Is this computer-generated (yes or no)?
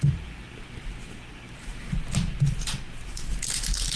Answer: no